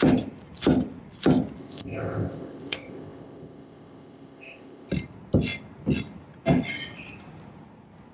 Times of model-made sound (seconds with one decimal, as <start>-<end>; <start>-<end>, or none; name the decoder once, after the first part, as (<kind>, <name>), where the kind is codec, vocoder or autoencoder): 1.6-4.9 (codec, ZipCodec)